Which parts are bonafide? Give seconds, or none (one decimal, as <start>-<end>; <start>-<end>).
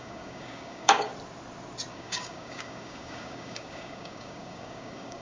1.1-1.9